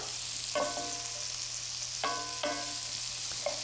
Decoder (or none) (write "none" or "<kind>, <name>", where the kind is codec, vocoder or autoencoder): none